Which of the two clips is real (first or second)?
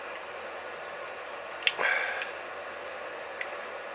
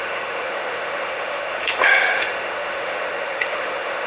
first